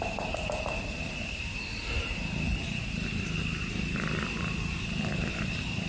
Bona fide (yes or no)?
no